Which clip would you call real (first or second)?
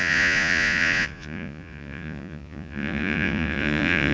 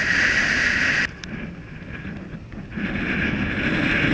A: second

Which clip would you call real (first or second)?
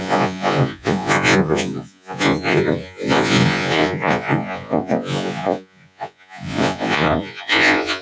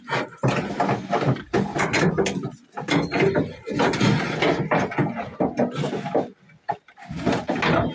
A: second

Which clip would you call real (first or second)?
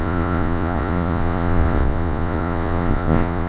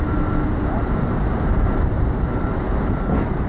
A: second